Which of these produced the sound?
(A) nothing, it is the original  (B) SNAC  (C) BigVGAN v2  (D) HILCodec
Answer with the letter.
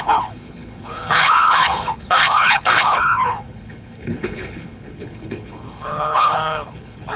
D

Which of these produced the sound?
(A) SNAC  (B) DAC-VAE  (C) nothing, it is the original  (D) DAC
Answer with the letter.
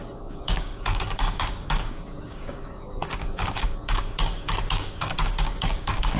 D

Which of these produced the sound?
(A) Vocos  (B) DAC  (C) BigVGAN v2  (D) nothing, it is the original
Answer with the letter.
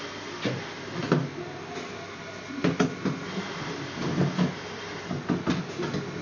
D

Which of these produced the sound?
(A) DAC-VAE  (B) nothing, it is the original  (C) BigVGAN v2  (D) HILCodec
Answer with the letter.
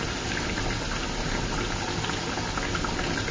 B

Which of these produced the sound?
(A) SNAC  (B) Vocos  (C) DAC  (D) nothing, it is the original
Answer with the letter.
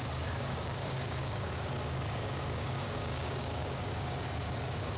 C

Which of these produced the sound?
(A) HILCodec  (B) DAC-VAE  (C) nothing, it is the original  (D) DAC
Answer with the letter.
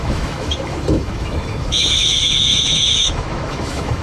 B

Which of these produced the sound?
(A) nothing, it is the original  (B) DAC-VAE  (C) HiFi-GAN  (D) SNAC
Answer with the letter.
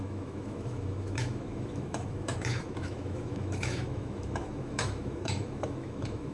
B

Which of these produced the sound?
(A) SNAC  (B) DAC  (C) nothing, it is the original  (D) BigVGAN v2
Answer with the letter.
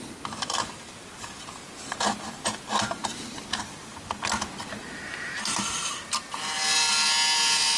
C